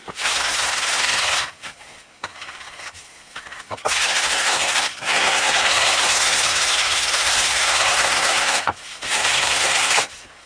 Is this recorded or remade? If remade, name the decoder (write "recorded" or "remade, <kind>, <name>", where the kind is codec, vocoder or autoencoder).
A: remade, codec, SNAC